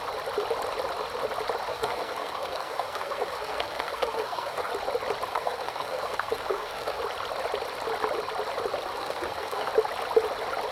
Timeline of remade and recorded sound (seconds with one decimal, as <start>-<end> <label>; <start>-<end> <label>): 0.0-1.7 recorded; 1.7-4.7 remade; 4.7-5.3 recorded; 5.3-7.0 remade; 7.0-8.9 recorded; 8.9-9.7 remade; 9.7-10.7 recorded